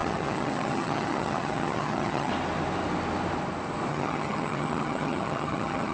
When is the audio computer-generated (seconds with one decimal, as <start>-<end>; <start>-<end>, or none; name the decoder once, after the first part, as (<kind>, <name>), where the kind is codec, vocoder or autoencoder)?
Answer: 0.0-2.3 (vocoder, HiFi-GAN); 3.9-5.9